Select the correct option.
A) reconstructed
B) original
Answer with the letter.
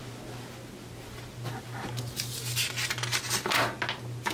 B